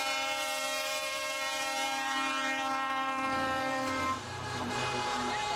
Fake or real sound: fake